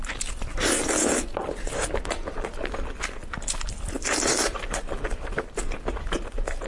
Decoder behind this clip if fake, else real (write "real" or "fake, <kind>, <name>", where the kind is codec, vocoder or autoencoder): real